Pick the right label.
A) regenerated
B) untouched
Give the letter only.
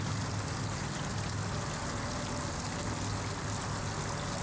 B